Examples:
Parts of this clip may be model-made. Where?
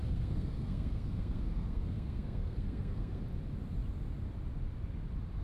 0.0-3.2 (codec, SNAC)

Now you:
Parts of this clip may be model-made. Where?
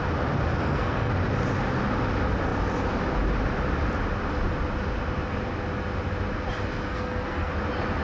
0.6-1.1 (codec, SNAC); 6.9-7.5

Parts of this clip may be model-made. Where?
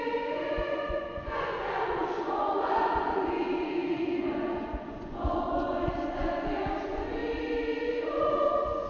0.0-7.2 (vocoder, Vocos); 7.8-8.9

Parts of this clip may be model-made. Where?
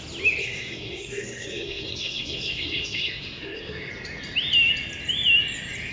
0.4-3.9 (codec, SNAC)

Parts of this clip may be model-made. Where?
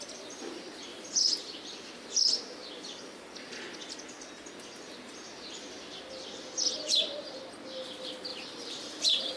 0.9-1.5 (vocoder, BigVGAN v2); 8.3-9.4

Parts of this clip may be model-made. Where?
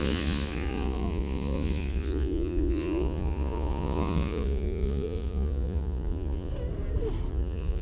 0.0-6.5 (vocoder, Vocos); 7.3-7.8